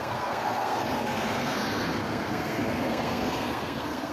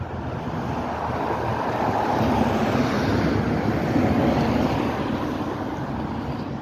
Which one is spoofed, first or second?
first